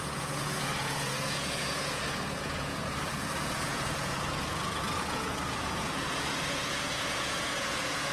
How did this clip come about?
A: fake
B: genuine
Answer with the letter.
A